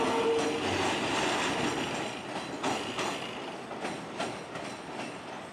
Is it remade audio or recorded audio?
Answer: recorded